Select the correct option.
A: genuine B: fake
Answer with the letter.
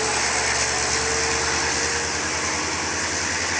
A